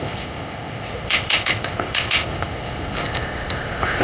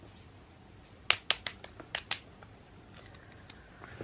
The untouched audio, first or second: second